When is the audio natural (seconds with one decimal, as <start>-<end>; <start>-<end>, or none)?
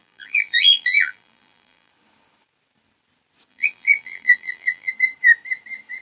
1.9-3.5; 4.9-6.0